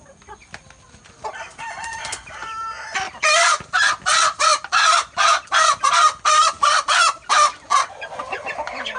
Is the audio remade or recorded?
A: remade